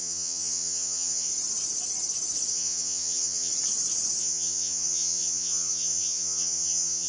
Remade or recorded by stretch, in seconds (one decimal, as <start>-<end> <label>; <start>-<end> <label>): 0.0-1.3 remade; 1.3-2.5 recorded; 2.5-3.5 remade; 3.5-4.2 recorded; 4.2-7.1 remade